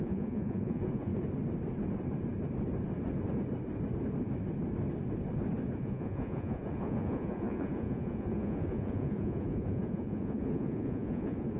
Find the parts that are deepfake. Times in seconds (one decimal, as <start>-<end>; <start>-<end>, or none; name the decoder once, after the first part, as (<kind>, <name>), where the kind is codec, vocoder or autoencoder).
0.0-1.1 (vocoder, Vocos); 5.8-11.6